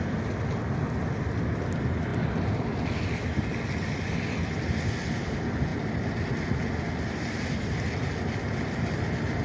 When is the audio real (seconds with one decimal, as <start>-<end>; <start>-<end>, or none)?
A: 0.0-9.4